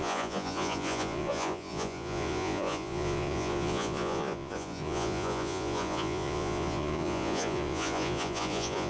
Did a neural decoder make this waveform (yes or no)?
yes